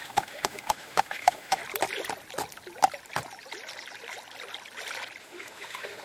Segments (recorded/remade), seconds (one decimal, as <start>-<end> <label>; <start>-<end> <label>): 0.0-1.6 remade; 1.6-5.2 recorded; 5.2-6.0 remade